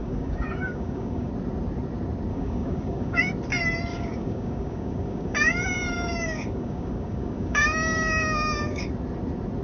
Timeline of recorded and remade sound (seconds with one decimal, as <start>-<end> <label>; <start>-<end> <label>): 0.0-1.3 remade; 1.3-2.3 recorded; 2.3-3.2 remade; 3.2-3.9 recorded; 3.9-8.9 remade; 8.9-9.6 recorded